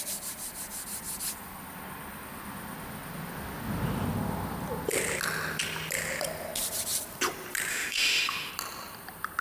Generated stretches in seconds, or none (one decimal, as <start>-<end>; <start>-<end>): 7.7-8.5